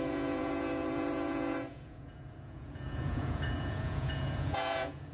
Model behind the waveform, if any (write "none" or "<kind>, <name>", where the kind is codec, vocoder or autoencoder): vocoder, Vocos